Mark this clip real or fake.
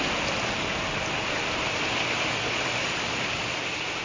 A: real